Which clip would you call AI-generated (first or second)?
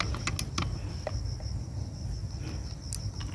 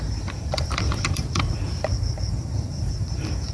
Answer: second